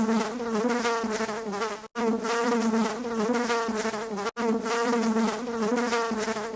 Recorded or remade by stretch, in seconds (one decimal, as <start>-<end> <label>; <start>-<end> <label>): 0.0-6.6 recorded